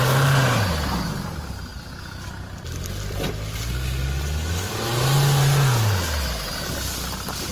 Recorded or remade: recorded